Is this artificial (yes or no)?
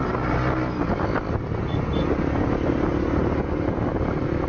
no